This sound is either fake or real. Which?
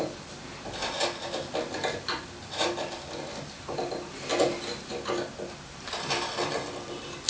real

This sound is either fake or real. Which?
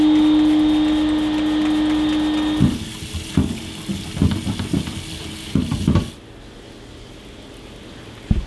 real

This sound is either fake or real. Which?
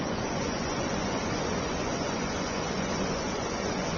fake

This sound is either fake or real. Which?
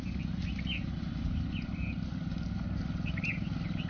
real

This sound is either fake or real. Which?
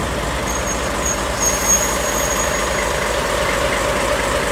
real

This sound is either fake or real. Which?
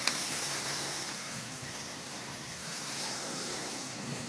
fake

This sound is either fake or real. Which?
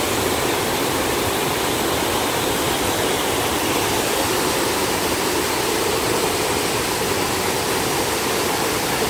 real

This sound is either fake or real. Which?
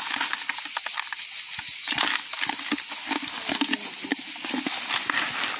real